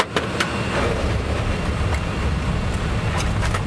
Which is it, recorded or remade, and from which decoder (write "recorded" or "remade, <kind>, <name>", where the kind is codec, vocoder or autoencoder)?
recorded